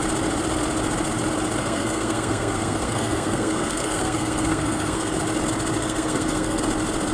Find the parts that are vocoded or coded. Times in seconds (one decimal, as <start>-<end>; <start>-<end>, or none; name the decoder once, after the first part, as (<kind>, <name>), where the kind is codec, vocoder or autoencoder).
1.6-5.2 (codec, SNAC); 5.8-6.6